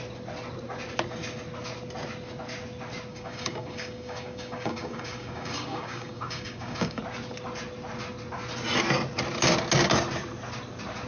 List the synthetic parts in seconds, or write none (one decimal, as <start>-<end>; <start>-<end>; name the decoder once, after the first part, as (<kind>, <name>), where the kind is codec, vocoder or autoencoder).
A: 3.1-7.0 (codec, DAC)